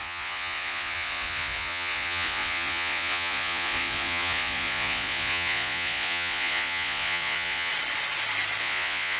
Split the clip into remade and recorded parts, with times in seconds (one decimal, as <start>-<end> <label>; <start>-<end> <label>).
0.0-7.7 remade; 7.7-8.6 recorded; 8.6-9.2 remade